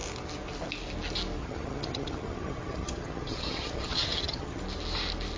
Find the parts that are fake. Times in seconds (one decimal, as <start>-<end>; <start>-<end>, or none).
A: 1.4-4.6